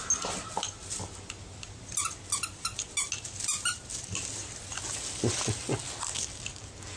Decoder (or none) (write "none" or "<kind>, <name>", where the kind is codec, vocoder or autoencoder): none